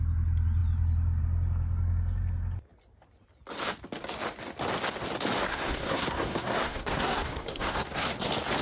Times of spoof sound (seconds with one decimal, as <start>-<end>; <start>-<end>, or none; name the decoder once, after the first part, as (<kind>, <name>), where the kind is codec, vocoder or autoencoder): 5.5-8.1 (codec, SNAC)